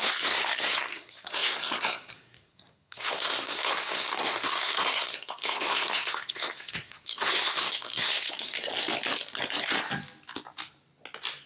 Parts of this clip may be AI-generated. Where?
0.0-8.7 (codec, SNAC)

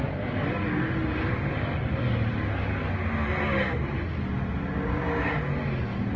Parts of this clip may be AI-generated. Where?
none

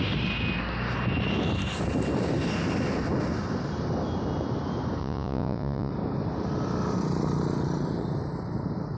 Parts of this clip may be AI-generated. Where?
5.0-5.9 (vocoder, Vocos)

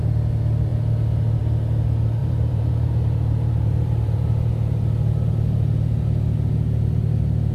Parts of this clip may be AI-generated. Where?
2.2-4.5 (vocoder, BigVGAN v2)

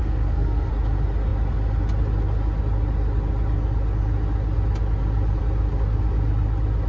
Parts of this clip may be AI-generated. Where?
0.0-0.7 (codec, SNAC)

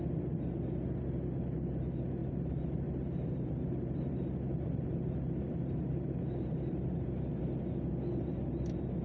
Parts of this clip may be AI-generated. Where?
2.2-7.4 (vocoder, BigVGAN v2)

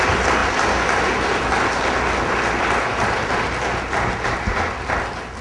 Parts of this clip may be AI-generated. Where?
none

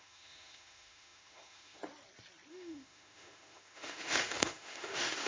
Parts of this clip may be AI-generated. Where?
0.0-1.8 (autoencoder, DAC-VAE); 2.5-5.3